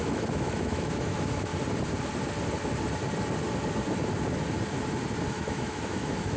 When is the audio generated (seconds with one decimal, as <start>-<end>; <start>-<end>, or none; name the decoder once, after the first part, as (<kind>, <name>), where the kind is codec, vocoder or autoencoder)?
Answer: 0.0-1.5 (autoencoder, DAC-VAE); 5.3-6.4

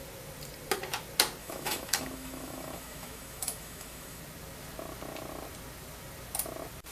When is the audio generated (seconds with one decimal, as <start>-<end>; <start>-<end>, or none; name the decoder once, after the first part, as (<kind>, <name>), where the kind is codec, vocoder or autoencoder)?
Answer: 1.4-4.2 (autoencoder, DAC-VAE)

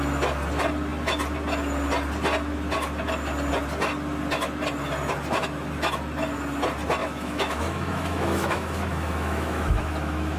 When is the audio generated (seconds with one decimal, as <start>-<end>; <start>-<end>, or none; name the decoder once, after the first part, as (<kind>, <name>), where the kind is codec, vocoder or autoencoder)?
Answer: 7.0-10.4 (autoencoder, DAC-VAE)

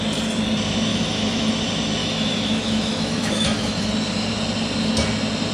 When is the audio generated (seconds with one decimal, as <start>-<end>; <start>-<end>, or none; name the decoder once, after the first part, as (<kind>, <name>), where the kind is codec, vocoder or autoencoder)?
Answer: 0.9-1.5 (autoencoder, DAC-VAE); 2.0-3.9

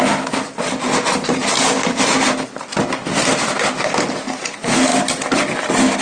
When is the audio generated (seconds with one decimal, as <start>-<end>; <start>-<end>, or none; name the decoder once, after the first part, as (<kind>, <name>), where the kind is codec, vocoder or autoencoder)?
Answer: none

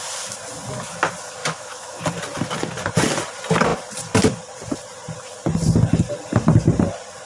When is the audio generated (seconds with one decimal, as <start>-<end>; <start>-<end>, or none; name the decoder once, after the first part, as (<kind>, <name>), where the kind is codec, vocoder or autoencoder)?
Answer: 1.4-2.0 (autoencoder, DAC-VAE)